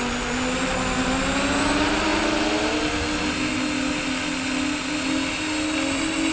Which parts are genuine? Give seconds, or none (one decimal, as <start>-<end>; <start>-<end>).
0.0-6.3